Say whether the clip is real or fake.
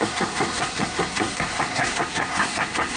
fake